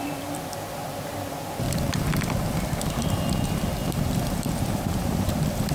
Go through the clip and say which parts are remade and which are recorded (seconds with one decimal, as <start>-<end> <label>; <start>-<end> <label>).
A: 0.0-3.8 recorded; 3.8-5.7 remade